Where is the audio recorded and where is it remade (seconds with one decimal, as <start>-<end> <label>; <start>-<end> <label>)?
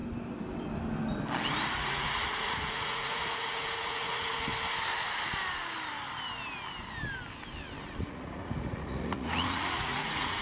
0.0-1.7 recorded; 1.7-4.5 remade; 4.5-8.0 recorded; 8.0-10.4 remade